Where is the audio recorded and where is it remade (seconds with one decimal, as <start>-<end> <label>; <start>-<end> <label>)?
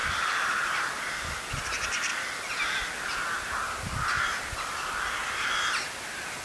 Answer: 0.0-1.4 remade; 1.4-6.4 recorded